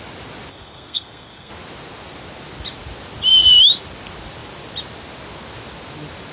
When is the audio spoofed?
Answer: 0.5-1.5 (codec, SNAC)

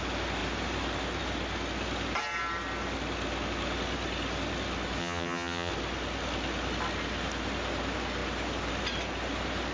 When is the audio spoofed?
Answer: 5.0-5.7 (vocoder, HiFi-GAN)